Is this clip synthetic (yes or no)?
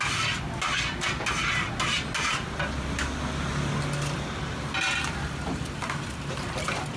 no